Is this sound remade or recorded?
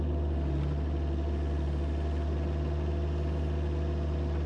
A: recorded